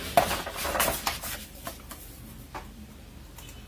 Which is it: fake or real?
real